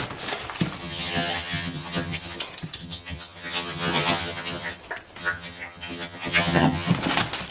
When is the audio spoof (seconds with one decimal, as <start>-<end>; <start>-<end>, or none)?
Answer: 0.8-2.4; 2.8-4.8; 5.2-6.9